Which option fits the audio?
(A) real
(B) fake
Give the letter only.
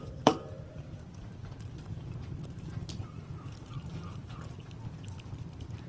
B